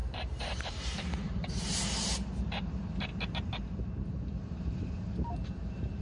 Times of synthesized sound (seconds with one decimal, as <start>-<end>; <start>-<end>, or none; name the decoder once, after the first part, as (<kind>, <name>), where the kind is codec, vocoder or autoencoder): 0.0-3.1 (vocoder, BigVGAN v2); 4.4-6.0